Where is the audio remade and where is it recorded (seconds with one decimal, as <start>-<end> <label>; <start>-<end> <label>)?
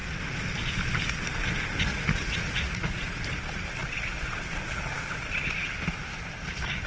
0.0-1.9 recorded; 1.9-3.0 remade; 3.0-6.9 recorded